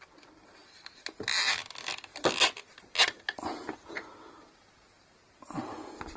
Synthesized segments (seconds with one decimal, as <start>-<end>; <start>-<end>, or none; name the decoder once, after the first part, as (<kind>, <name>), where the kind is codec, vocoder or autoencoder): none